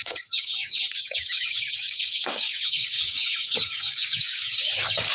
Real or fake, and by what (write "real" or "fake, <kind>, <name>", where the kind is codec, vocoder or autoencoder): fake, codec, DAC